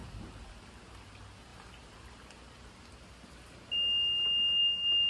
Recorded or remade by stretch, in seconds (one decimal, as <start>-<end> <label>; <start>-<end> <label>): 0.0-5.1 recorded